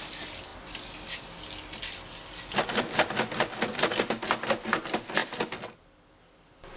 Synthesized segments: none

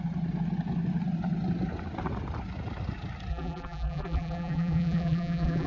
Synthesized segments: 3.3-5.7 (vocoder, BigVGAN v2)

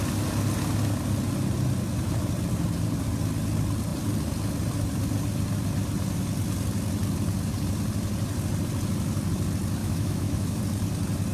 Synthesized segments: 9.8-10.6 (autoencoder, DAC-VAE)